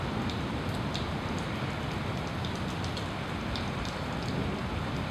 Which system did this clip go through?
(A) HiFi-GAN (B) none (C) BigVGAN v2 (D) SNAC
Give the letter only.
B